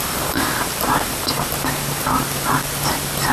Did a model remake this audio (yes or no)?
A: no